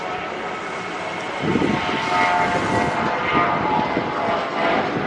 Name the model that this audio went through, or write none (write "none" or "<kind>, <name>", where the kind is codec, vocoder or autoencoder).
none